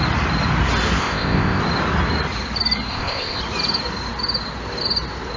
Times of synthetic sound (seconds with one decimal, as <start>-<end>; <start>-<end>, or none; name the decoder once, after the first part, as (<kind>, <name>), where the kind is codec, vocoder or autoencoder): 1.0-1.6 (codec, ZipCodec); 2.9-3.4